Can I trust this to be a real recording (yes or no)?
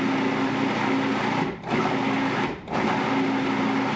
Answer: yes